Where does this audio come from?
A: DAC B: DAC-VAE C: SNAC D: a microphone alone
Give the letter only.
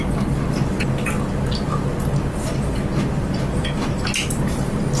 D